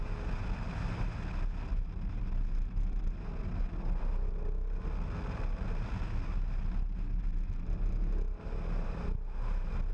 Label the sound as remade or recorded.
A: recorded